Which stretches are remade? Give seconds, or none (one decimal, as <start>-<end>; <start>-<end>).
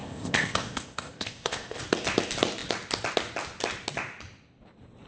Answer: 0.0-1.8